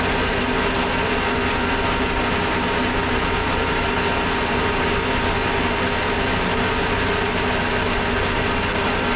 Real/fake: real